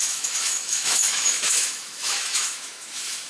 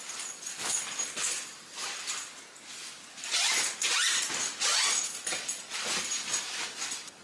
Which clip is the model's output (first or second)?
first